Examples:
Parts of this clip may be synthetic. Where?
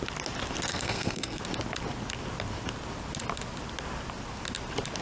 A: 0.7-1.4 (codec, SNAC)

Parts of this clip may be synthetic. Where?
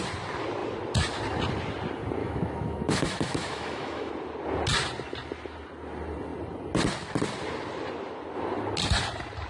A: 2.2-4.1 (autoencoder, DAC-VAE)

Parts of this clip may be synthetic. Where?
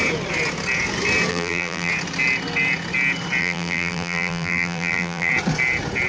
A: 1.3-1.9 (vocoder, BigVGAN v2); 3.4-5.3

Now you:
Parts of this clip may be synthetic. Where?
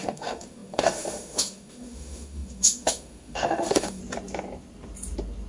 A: 0.0-4.0 (autoencoder, DAC-VAE)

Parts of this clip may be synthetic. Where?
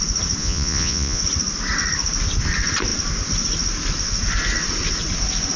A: 0.4-1.2 (vocoder, Vocos)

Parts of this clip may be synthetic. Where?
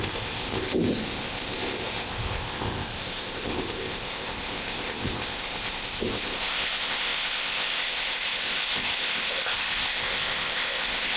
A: 0.0-11.2 (codec, ZipCodec)